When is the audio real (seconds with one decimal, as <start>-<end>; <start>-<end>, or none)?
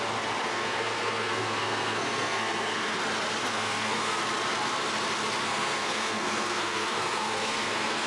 0.0-0.5; 3.0-3.4; 4.2-5.4